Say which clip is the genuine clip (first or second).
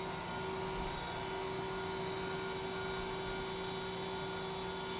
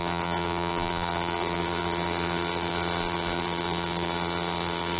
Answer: first